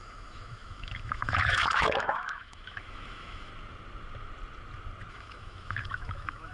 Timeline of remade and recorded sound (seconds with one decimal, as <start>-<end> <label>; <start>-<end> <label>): 0.0-3.5 remade; 3.5-5.1 recorded; 5.1-6.5 remade